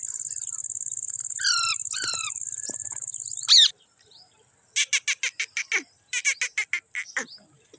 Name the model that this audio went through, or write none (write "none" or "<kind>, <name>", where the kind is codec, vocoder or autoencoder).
none